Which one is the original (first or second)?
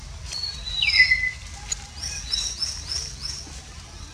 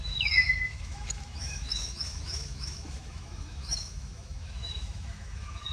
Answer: first